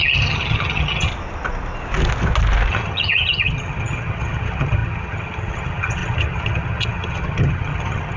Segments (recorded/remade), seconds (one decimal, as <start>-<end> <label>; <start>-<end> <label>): 0.0-1.1 remade; 1.1-2.7 recorded; 2.7-8.2 remade